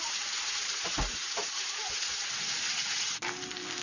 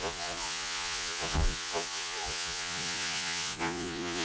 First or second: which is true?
first